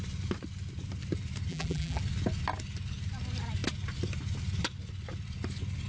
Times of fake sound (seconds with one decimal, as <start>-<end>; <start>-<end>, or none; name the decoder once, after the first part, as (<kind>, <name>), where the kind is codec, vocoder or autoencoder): 1.5-2.0 (vocoder, BigVGAN v2)